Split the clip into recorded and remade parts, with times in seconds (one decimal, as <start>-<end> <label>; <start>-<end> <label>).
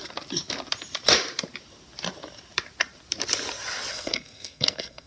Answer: 0.0-3.9 recorded; 3.9-5.1 remade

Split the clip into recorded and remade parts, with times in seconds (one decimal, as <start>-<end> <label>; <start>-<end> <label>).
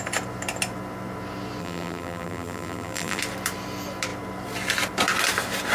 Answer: 0.0-1.6 recorded; 1.6-3.2 remade; 3.2-5.7 recorded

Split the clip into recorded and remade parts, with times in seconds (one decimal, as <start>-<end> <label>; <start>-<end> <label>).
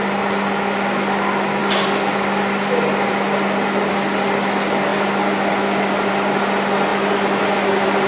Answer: 0.0-8.1 recorded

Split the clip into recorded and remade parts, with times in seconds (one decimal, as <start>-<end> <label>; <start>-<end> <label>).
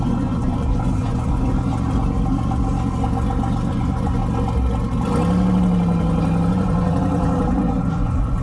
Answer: 0.0-1.7 remade; 1.7-3.7 recorded; 3.7-4.2 remade; 4.2-6.5 recorded; 6.5-8.4 remade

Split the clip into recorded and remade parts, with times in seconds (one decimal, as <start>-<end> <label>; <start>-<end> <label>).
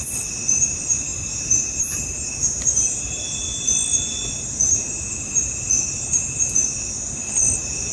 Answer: 0.0-1.1 recorded; 1.1-3.2 remade; 3.2-7.9 recorded